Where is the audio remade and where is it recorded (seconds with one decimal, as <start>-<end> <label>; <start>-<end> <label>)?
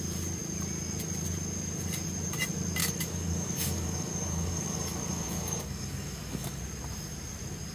0.0-2.8 recorded; 2.8-6.6 remade; 6.6-7.7 recorded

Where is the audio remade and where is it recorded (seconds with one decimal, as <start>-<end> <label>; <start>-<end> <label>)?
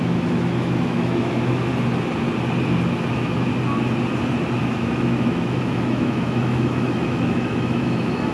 0.0-1.7 remade; 1.7-3.1 recorded; 3.1-3.5 remade; 3.5-4.6 recorded; 4.6-8.3 remade